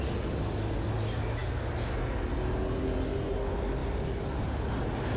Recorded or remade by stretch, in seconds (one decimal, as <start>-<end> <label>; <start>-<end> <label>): 0.0-5.2 recorded